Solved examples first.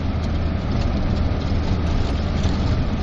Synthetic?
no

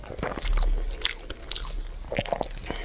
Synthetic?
no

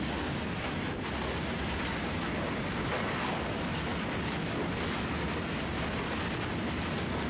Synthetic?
no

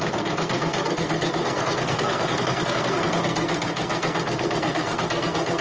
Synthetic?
yes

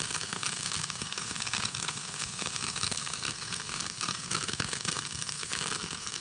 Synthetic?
yes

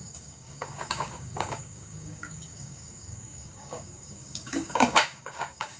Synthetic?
yes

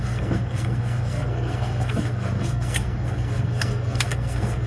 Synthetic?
yes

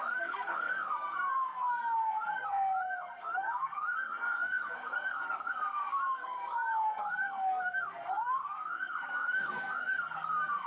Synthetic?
yes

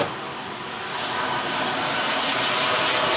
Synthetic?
no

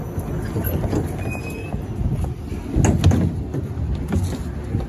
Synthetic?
no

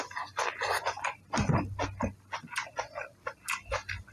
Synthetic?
no